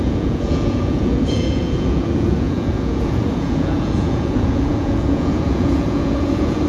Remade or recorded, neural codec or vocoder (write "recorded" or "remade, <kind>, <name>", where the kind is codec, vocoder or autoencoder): remade, vocoder, Vocos